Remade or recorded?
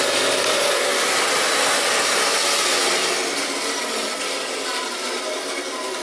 recorded